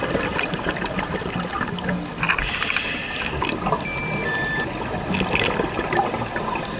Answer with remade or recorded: recorded